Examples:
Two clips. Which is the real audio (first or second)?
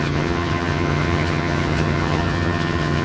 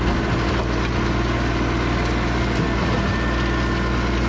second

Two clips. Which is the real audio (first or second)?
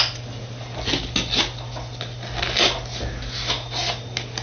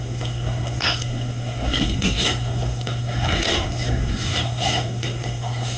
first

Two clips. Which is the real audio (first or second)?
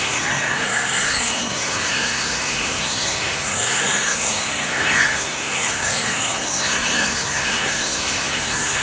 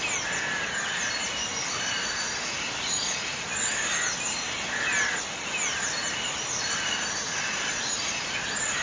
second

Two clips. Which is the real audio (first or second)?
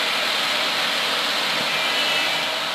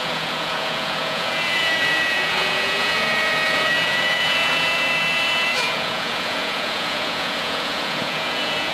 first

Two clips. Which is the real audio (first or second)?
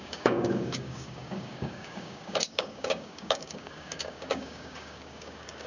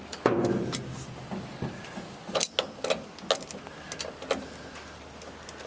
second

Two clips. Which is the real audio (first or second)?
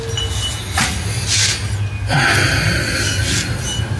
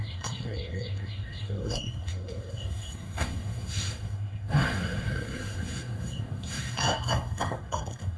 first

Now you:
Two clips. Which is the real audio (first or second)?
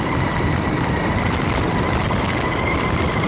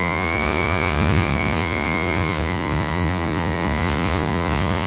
first